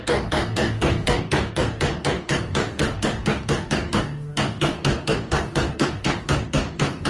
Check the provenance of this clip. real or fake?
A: fake